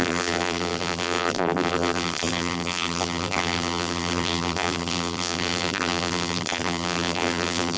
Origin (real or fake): fake